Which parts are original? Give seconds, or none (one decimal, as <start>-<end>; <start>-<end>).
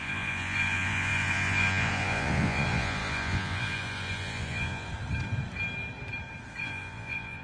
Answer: 4.9-6.6